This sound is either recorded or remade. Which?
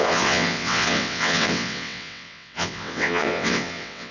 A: remade